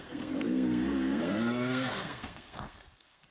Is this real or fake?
fake